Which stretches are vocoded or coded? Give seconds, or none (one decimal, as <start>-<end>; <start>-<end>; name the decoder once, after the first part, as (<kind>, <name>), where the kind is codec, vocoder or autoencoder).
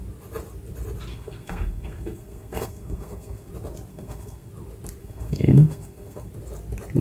1.1-3.5 (codec, SNAC); 3.9-4.5; 5.0-6.3